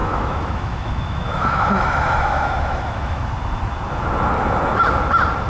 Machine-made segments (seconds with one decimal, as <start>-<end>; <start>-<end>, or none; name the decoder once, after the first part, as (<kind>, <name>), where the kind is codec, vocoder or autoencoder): 0.0-3.3 (autoencoder, DAC-VAE)

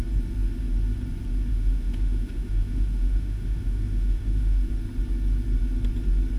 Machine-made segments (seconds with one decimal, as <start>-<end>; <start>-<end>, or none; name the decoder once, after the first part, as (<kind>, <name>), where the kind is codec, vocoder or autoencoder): 1.5-4.7 (autoencoder, DAC-VAE)

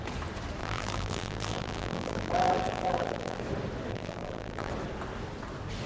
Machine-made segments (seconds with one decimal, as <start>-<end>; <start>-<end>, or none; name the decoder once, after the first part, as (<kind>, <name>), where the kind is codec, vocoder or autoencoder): 0.6-3.4 (vocoder, BigVGAN v2); 3.9-4.7

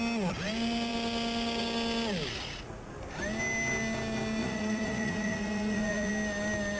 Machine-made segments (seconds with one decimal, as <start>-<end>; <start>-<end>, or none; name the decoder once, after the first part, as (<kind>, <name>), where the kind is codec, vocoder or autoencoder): 2.3-2.9 (vocoder, Vocos); 4.4-6.1